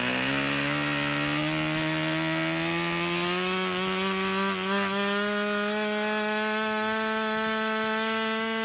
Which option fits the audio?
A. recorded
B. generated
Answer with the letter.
A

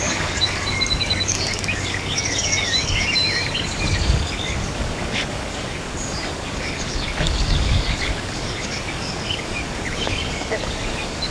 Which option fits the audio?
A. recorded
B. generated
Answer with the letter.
B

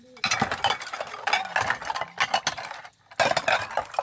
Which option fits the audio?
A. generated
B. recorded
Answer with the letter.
B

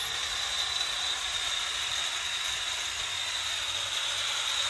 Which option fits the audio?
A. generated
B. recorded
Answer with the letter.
B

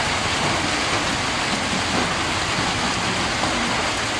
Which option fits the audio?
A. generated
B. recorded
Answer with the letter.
B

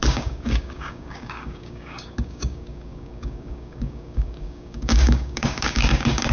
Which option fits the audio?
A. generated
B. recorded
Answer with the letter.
A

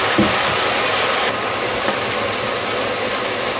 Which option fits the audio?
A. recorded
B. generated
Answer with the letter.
A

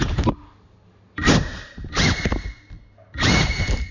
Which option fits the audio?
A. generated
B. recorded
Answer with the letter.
B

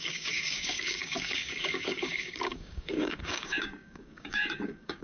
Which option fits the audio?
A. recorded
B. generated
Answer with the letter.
B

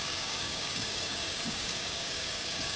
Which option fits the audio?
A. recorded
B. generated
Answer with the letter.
B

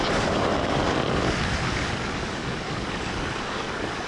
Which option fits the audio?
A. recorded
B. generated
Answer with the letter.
B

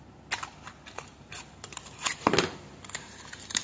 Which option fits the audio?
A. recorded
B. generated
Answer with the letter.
A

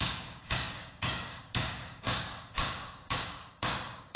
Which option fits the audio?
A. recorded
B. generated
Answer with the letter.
B